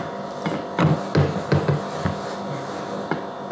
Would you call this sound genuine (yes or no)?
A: yes